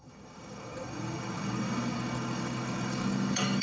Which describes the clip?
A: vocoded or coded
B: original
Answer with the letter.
A